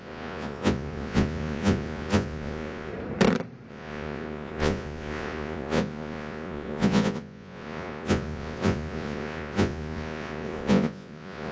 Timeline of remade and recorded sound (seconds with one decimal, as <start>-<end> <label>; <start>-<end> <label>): 0.0-2.9 remade; 2.9-3.7 recorded; 3.7-11.5 remade